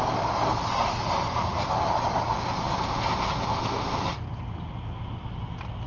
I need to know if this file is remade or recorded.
recorded